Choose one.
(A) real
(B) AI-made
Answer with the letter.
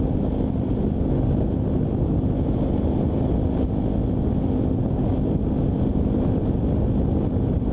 A